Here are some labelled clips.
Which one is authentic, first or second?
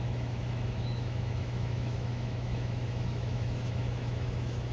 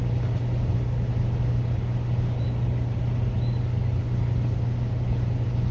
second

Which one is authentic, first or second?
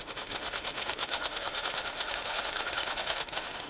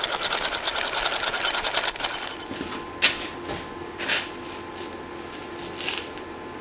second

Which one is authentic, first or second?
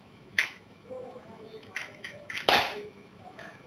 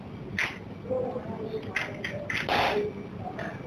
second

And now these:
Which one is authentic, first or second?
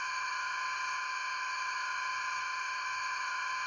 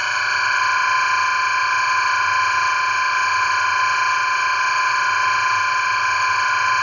second